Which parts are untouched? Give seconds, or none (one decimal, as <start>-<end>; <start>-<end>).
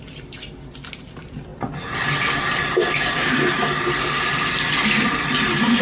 0.0-5.8